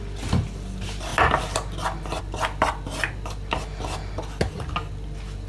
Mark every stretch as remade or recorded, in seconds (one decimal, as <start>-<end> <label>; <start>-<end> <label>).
0.0-5.5 recorded